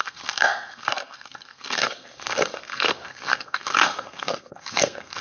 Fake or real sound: fake